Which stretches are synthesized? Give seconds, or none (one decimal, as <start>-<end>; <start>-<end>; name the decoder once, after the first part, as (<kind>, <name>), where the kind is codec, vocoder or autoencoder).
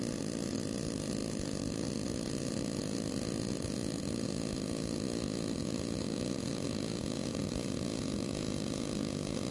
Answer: none